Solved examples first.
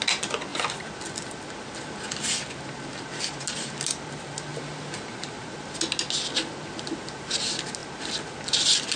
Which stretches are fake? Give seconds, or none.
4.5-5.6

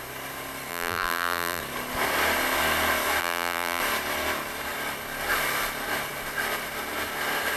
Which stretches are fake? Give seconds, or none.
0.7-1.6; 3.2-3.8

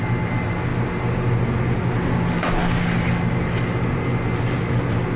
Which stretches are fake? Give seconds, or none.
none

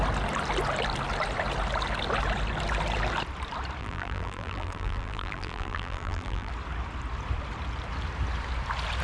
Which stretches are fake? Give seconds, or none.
3.8-6.5